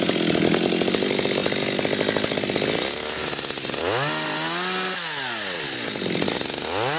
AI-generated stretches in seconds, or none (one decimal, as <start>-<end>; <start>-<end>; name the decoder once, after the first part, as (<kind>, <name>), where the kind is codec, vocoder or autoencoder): none